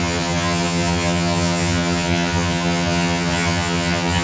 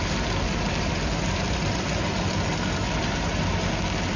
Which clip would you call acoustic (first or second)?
second